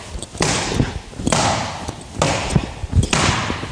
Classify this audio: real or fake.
real